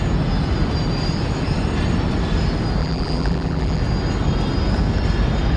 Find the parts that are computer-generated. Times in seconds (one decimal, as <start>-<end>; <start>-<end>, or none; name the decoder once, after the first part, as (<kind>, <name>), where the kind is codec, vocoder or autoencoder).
2.8-3.8 (vocoder, BigVGAN v2)